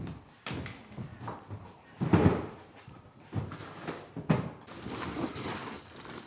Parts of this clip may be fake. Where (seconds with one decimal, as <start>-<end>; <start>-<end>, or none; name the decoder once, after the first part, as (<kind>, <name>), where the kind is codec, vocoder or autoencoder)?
1.1-3.1 (vocoder, BigVGAN v2); 3.6-4.3